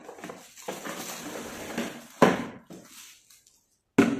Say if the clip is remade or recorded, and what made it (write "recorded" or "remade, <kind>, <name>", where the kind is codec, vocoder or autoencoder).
recorded